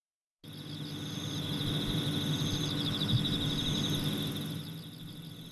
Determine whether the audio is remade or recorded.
recorded